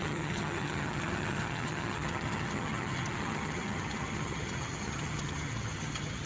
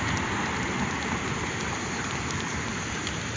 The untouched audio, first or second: second